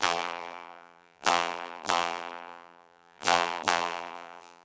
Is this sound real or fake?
fake